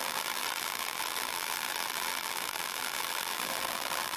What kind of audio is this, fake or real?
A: fake